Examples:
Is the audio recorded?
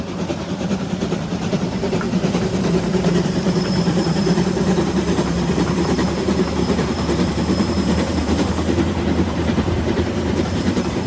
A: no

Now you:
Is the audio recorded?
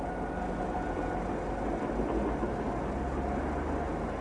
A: yes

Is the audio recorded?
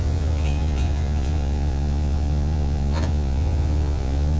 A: no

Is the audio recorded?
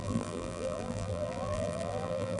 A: no